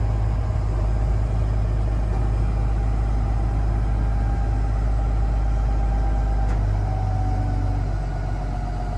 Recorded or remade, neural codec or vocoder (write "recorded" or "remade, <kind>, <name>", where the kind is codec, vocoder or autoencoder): recorded